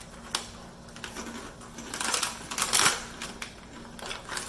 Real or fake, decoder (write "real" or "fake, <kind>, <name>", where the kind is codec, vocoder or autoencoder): real